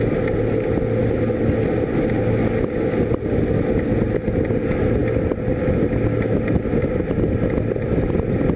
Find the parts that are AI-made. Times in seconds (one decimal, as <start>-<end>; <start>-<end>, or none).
none